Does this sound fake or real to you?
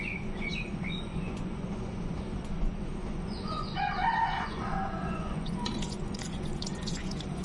fake